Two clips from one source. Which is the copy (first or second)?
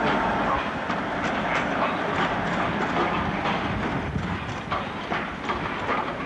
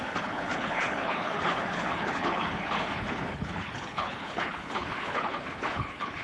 second